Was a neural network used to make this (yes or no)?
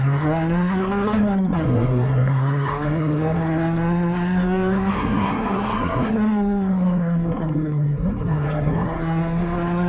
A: yes